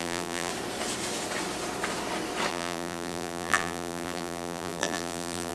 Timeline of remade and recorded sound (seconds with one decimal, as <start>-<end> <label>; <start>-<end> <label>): 0.0-0.5 remade; 0.5-2.5 recorded; 2.5-5.5 remade